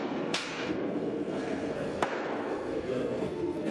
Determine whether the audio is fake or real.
fake